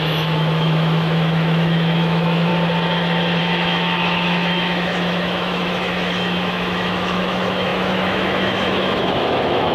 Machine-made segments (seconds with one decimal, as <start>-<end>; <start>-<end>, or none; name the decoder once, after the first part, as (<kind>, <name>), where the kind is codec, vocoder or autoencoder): 0.0-2.5 (autoencoder, DAC-VAE); 3.4-9.7